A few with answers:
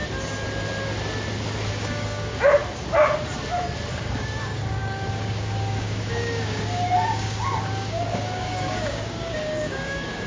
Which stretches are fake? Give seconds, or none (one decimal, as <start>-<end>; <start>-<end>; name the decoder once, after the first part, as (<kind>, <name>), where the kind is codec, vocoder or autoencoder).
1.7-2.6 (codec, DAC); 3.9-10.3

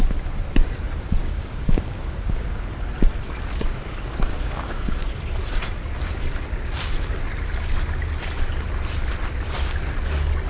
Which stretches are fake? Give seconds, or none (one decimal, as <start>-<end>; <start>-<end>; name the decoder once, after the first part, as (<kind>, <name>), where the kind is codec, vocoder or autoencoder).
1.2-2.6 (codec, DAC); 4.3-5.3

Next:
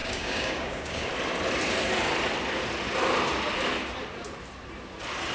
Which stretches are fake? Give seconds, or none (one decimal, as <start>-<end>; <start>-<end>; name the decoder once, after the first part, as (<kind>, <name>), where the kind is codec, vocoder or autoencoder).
0.0-1.1 (codec, DAC)

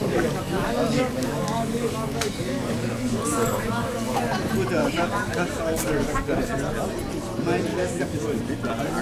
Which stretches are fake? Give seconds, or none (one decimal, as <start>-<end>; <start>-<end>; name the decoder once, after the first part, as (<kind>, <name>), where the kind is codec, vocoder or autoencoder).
0.0-4.2 (codec, DAC); 4.8-6.5; 7.7-8.4

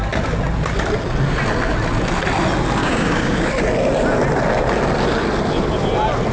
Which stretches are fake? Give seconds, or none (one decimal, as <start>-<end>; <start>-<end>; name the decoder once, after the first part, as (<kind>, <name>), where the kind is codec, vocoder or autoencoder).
2.8-3.5 (codec, DAC)

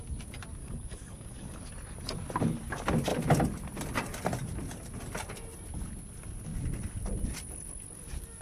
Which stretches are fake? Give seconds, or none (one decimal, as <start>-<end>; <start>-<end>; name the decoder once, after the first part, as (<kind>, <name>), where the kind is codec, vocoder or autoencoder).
0.6-1.6 (codec, DAC)

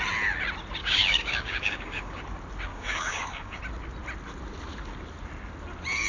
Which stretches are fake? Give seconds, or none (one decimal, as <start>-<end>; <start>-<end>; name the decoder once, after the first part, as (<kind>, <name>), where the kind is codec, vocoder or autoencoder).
0.8-2.2 (codec, DAC); 2.7-3.6

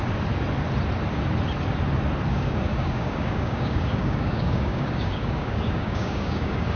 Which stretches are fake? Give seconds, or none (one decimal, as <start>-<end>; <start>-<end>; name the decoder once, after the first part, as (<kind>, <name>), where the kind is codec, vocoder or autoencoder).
2.3-6.8 (codec, DAC)